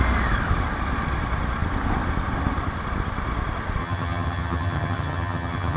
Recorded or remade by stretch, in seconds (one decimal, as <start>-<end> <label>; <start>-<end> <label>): 0.0-3.8 recorded; 3.8-5.8 remade